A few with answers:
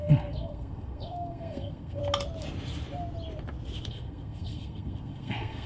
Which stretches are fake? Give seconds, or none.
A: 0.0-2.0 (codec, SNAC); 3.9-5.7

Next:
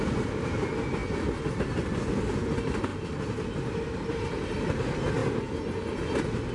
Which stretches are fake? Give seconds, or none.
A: none

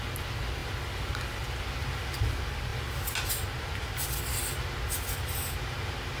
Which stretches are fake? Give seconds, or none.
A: none